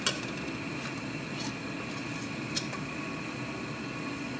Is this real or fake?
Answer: real